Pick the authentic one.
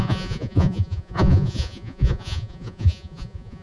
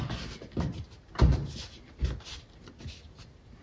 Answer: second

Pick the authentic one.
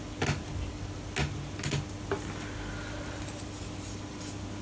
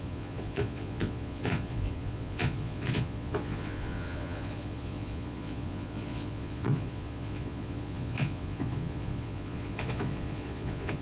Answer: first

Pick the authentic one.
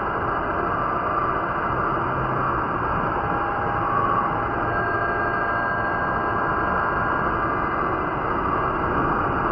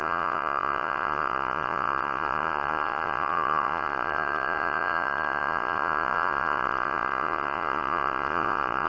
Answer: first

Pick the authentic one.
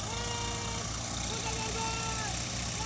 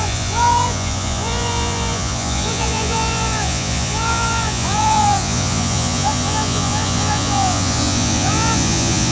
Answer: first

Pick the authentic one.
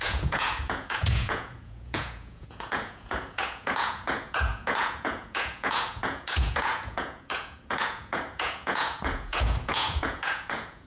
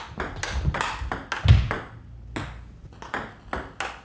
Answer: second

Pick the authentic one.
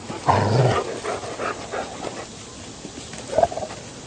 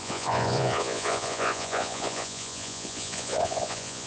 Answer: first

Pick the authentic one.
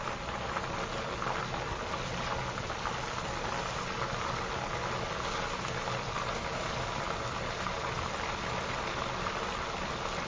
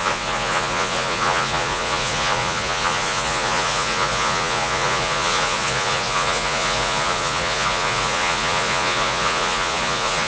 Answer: first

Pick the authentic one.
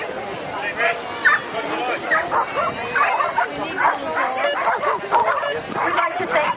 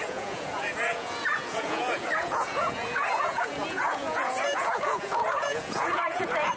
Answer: first